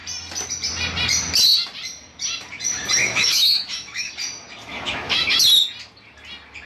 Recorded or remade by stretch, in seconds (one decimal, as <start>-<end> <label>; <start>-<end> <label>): 0.0-3.0 recorded; 3.0-4.1 remade; 4.1-4.7 recorded; 4.7-5.3 remade; 5.3-6.7 recorded